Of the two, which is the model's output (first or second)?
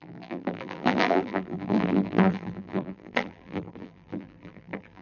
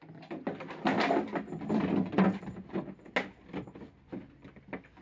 first